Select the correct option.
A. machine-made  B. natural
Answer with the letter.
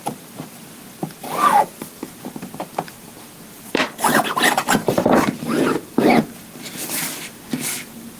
A